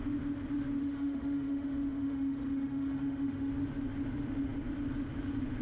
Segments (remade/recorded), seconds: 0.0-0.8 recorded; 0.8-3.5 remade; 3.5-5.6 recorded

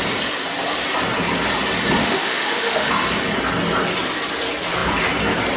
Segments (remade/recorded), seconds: 0.0-2.0 recorded; 2.0-2.9 remade; 2.9-5.6 recorded

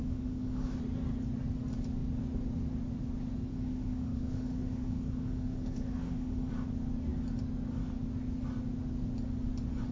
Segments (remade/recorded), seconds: 0.0-0.8 remade; 0.8-3.5 recorded; 3.5-6.5 remade; 6.5-9.9 recorded

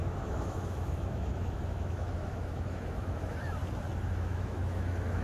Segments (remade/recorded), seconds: 0.0-3.6 remade; 3.6-4.1 recorded; 4.1-5.2 remade

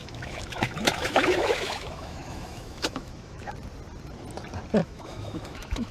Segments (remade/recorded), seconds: 0.0-3.5 remade; 3.5-4.8 recorded; 4.8-5.9 remade

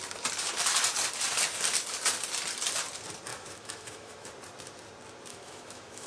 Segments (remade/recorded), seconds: 0.0-3.3 recorded; 3.3-4.3 remade; 4.3-5.3 recorded; 5.3-6.1 remade

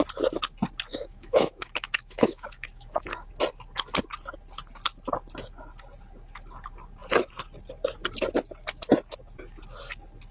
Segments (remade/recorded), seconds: 0.0-0.9 recorded; 0.9-3.3 remade; 3.3-10.3 recorded